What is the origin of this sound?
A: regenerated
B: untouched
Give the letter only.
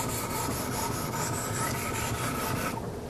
B